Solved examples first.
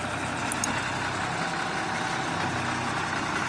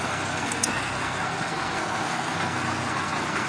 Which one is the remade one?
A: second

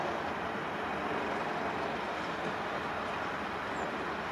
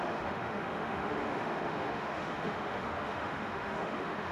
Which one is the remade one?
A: second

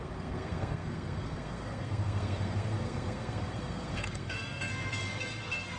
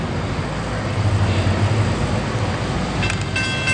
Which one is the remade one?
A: first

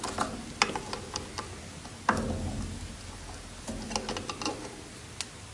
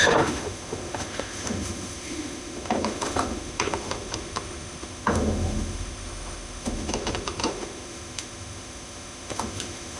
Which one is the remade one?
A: second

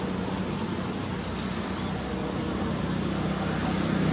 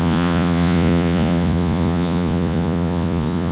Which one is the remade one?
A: second